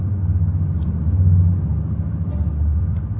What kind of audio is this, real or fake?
real